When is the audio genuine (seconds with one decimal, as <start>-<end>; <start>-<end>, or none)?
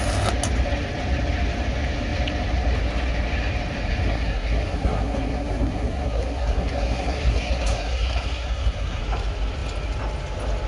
0.0-4.0; 9.0-10.7